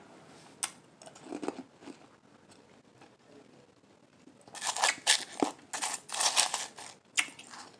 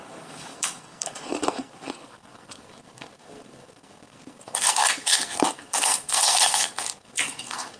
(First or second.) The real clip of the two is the first